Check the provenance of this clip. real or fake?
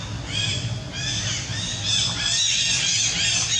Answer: real